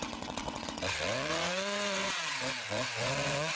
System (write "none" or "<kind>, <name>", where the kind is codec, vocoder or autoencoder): vocoder, WaveNeXt